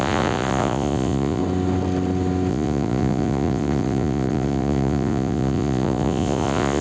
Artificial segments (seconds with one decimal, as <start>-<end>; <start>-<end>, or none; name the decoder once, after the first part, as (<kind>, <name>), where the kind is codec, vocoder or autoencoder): 0.0-1.4 (vocoder, Vocos); 2.5-6.8